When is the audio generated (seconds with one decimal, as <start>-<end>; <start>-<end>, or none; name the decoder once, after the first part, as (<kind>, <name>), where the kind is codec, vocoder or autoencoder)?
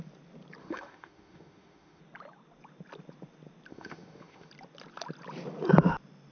0.6-2.0 (autoencoder, DAC-VAE); 3.7-4.5